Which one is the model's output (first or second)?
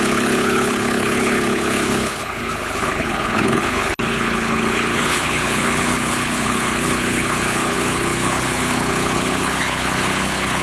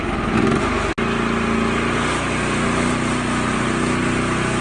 first